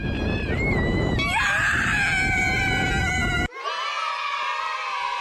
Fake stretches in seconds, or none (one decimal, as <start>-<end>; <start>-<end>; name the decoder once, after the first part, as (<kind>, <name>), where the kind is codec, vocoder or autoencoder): none